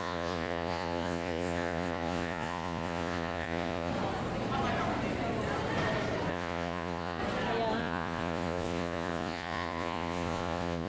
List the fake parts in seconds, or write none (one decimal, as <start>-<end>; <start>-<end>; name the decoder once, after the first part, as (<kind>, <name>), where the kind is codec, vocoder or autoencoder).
0.0-3.9 (vocoder, Vocos); 6.3-7.2; 7.8-10.9